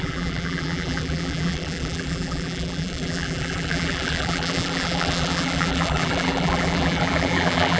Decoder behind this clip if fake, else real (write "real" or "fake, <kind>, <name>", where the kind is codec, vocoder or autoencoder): fake, vocoder, BigVGAN v2